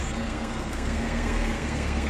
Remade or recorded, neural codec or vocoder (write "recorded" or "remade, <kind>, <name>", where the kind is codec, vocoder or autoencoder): remade, codec, SNAC